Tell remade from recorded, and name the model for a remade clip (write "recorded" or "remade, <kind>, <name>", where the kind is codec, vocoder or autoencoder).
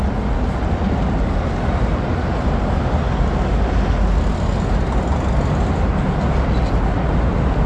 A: recorded